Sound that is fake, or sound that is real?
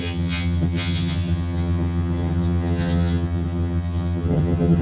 fake